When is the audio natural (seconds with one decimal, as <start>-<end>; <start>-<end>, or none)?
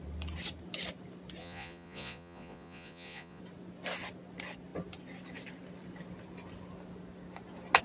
0.0-1.4; 3.4-7.8